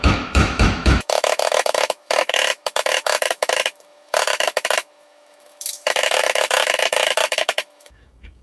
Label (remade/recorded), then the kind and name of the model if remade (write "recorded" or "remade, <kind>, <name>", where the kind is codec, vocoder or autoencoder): remade, autoencoder, DAC-VAE